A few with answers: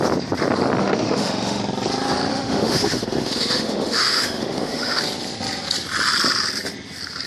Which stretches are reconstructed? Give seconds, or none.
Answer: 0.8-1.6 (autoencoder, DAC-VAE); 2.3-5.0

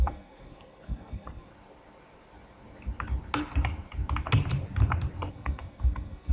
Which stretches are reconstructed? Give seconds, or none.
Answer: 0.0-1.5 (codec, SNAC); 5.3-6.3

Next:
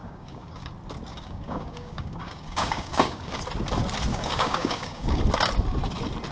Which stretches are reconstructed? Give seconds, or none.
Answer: 0.0-0.7 (codec, DAC); 1.1-3.4; 4.1-5.2